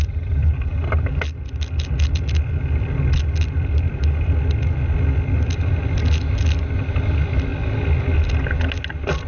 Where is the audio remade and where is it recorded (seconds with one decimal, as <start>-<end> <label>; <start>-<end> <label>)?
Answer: 0.0-9.3 recorded